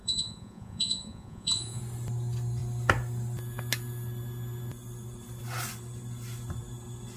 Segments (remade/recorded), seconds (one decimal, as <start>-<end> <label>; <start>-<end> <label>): 0.0-1.8 remade; 1.8-7.2 recorded